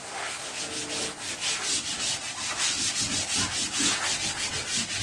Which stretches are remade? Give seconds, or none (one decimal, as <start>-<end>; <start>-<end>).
0.0-0.6